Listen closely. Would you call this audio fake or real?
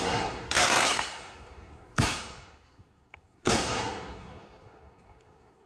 fake